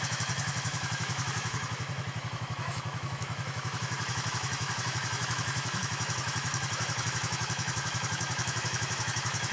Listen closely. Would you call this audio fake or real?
fake